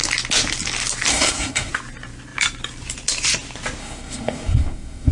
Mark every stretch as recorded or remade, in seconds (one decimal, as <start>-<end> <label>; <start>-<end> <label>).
0.0-1.1 recorded; 1.1-1.7 remade; 1.7-3.8 recorded; 3.8-5.1 remade